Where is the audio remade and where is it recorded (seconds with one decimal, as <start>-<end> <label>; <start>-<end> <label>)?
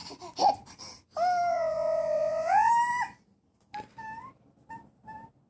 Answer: 0.0-1.5 recorded; 1.5-2.7 remade; 2.7-5.5 recorded